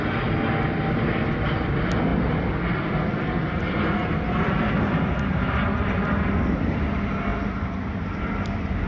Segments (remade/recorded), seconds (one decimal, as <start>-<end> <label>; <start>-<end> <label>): 0.0-8.9 recorded